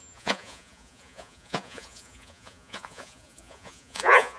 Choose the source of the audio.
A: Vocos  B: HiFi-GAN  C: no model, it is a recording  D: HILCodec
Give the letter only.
A